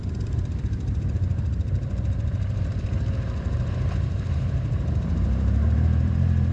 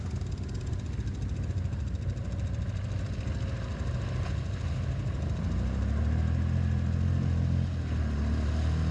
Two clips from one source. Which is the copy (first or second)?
first